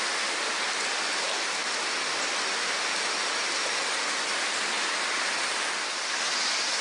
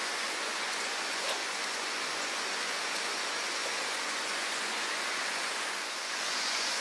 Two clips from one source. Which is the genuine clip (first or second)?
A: first